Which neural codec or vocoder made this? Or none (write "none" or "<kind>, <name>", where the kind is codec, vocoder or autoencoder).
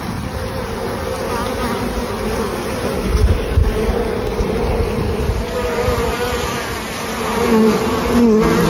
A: none